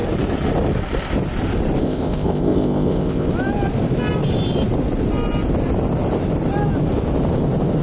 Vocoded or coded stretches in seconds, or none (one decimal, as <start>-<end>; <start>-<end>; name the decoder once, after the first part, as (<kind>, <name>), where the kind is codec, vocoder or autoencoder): 1.8-3.3 (codec, ZipCodec)